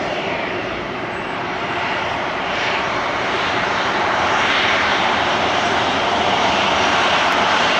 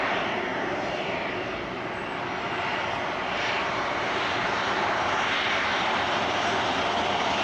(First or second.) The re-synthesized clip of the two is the first